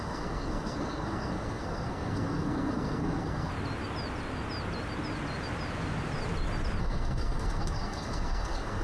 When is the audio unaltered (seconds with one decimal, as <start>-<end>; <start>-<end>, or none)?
3.5-6.8